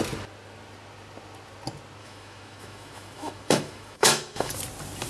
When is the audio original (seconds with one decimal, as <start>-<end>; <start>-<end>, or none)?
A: 0.0-2.0; 4.5-5.1